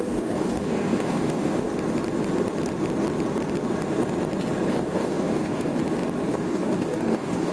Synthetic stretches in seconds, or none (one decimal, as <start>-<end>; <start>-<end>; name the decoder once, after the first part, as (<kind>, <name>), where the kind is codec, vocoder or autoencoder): 0.0-1.7 (codec, DAC); 4.7-5.7; 6.3-7.5

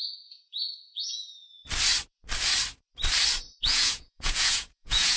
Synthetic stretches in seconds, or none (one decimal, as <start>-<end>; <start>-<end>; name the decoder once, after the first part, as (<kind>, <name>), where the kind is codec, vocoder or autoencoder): 0.0-1.6 (vocoder, Vocos); 3.6-5.2

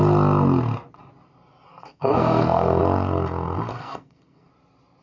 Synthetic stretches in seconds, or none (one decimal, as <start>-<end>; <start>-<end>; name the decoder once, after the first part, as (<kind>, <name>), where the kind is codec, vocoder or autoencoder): 1.7-2.8 (codec, SNAC); 3.7-4.5

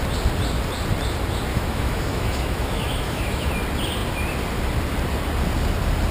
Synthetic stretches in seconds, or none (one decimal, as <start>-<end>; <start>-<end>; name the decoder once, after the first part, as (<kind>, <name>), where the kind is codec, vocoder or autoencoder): 1.5-3.5 (autoencoder, DAC-VAE)